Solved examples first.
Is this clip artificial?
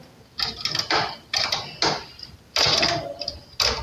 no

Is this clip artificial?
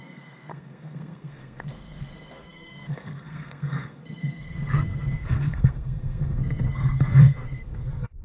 yes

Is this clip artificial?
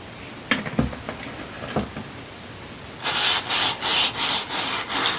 no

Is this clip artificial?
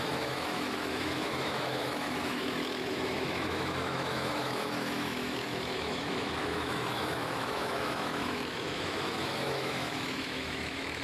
yes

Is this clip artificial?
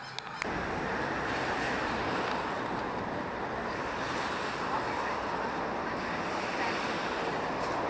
no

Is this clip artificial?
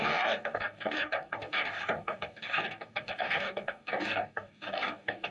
yes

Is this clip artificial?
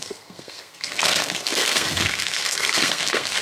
yes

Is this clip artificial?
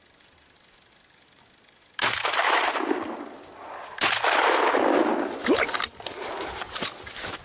no